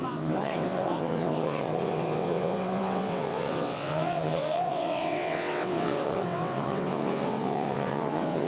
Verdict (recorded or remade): remade